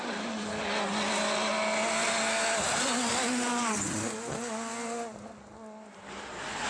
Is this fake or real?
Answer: real